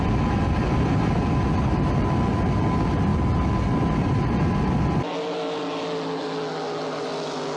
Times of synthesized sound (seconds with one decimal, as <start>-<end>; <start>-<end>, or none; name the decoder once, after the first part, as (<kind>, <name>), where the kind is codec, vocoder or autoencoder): none